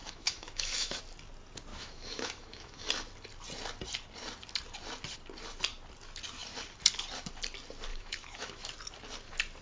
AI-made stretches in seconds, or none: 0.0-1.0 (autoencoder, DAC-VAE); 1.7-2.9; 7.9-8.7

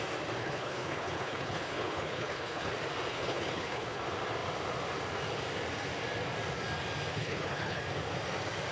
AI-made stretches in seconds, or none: 0.4-2.7 (codec, HILCodec); 3.1-4.0; 7.1-7.8

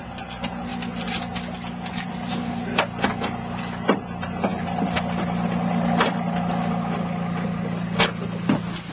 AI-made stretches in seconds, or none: none